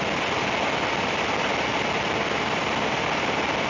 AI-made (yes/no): no